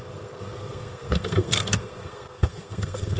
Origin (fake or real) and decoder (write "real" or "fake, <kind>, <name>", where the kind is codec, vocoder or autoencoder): fake, codec, SNAC